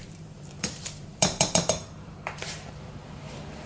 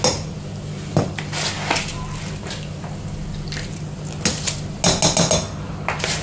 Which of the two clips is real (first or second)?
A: second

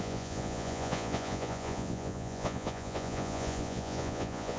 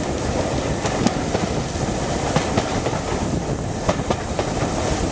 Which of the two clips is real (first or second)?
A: second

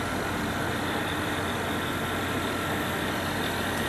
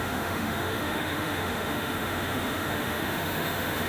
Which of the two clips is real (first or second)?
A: first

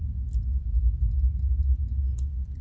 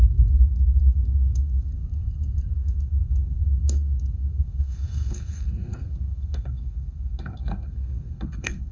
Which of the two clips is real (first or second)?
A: first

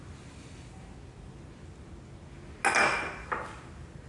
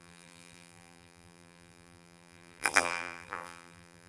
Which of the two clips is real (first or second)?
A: first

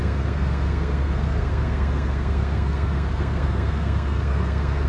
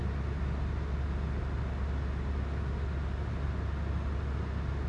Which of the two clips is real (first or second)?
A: second